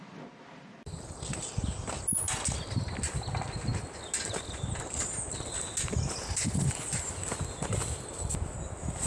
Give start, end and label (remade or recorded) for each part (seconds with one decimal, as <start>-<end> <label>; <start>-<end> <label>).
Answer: 0.0-6.2 recorded; 6.2-6.9 remade; 6.9-9.1 recorded